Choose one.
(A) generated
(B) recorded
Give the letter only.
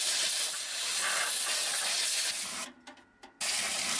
B